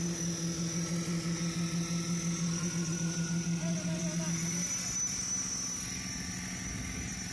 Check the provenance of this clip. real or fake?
real